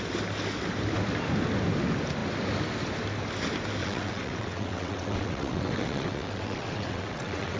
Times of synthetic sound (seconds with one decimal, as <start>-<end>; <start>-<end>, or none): 3.8-7.6